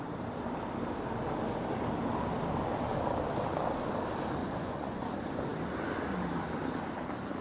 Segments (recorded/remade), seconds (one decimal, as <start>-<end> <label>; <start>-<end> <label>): 0.0-4.4 recorded; 4.4-5.1 remade; 5.1-7.4 recorded